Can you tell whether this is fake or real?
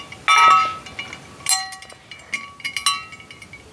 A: real